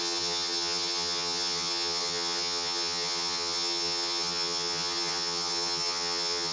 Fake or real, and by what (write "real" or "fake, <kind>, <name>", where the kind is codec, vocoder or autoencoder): fake, vocoder, HiFi-GAN